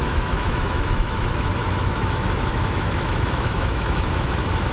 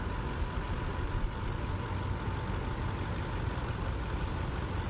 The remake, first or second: first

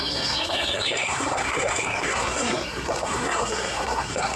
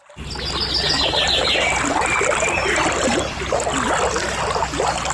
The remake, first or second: first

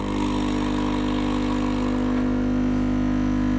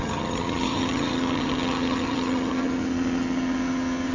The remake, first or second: second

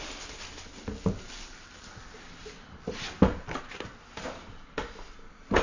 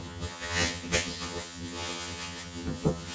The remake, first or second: second